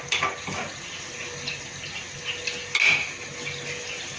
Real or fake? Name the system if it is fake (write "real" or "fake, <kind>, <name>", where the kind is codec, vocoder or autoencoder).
real